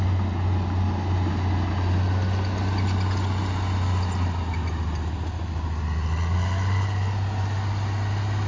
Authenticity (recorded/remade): recorded